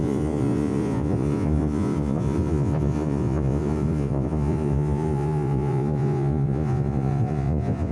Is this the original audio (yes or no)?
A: no